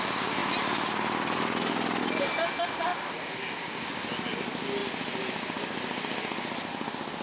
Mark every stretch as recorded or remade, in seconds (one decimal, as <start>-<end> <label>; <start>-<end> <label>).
0.0-7.2 recorded